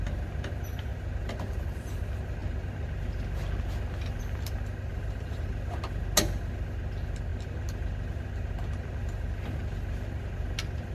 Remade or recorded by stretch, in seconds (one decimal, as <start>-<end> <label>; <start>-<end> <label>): 0.0-4.9 recorded; 4.9-5.5 remade; 5.5-10.9 recorded